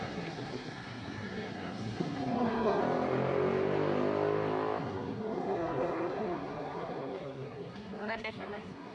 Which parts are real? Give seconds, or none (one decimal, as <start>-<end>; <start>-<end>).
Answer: 2.8-4.8